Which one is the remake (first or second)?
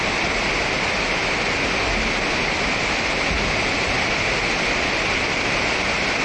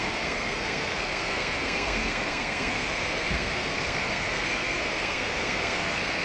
second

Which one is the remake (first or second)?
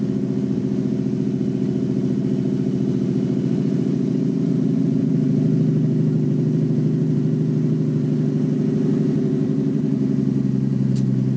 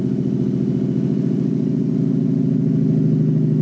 first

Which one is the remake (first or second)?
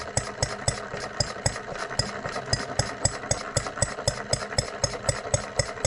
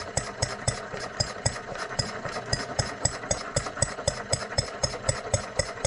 second